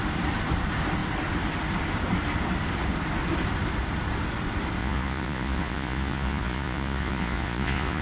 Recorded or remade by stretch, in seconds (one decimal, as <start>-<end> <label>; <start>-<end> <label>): 0.0-4.8 recorded; 4.8-8.0 remade